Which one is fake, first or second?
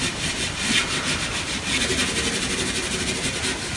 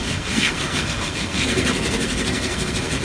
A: second